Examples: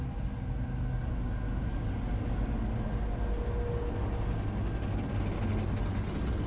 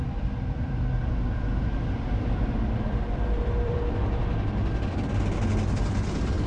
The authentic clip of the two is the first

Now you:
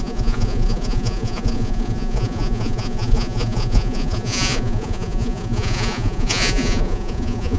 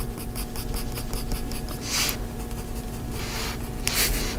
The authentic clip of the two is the second